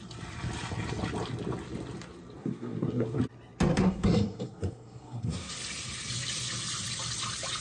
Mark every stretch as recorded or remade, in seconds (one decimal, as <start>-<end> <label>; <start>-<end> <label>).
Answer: 0.0-2.4 recorded; 2.4-3.2 remade; 3.2-3.7 recorded; 3.7-5.5 remade; 5.5-7.6 recorded